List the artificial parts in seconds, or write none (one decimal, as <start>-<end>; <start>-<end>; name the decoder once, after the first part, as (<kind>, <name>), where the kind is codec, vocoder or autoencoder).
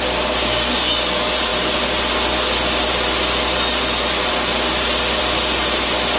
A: none